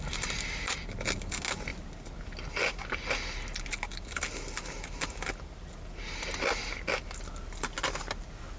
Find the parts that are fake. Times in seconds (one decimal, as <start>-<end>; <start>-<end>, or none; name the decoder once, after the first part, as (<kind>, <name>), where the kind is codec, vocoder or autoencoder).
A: none

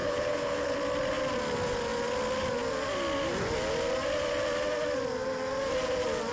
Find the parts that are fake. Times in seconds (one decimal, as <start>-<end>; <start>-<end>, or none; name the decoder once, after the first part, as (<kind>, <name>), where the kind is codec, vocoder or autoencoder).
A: 0.0-0.8 (codec, HILCodec)

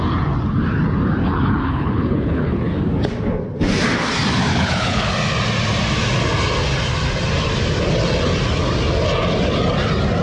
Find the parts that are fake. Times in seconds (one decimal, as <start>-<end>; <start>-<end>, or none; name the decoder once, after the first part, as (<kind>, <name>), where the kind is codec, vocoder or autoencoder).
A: 1.2-2.6 (codec, HILCodec); 4.5-5.1

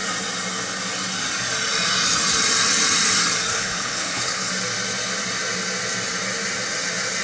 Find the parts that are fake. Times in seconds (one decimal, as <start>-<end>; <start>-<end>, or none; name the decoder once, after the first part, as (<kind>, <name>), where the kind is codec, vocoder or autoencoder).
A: 3.5-4.5 (codec, HILCodec)

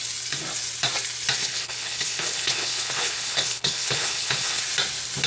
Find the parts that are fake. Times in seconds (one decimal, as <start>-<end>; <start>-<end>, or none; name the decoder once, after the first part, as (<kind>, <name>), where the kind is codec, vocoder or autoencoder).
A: 1.4-4.6 (codec, HILCodec)

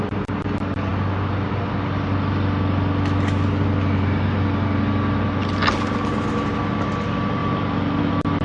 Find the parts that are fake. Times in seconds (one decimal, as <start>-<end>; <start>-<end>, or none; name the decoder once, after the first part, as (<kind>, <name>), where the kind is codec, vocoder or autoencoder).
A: none

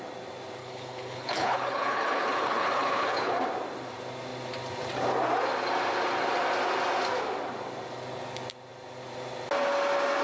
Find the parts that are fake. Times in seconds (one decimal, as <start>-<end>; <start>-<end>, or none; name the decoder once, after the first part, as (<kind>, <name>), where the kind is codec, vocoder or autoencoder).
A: 0.6-3.4 (codec, HILCodec)

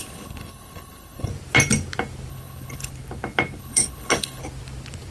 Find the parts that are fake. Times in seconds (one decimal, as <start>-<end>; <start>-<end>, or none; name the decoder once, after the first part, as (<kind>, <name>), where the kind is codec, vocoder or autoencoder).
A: 0.0-1.3 (codec, HILCodec); 2.3-2.9; 3.6-4.4